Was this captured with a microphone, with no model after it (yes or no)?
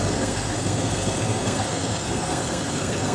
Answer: no